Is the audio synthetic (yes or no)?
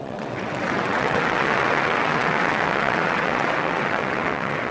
yes